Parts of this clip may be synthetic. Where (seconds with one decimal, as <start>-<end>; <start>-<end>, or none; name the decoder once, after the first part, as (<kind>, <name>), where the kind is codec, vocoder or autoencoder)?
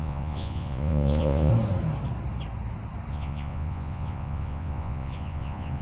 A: 0.0-1.5 (vocoder, Vocos); 3.1-5.8